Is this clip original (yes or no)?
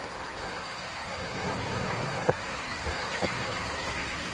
no